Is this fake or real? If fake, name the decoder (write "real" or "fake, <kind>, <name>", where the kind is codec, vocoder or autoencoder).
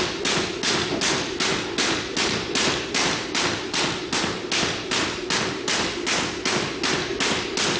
real